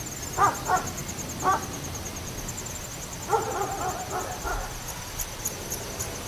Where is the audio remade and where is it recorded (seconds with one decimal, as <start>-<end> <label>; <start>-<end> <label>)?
0.0-6.3 recorded